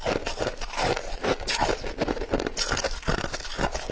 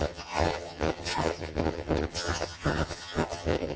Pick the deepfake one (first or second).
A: second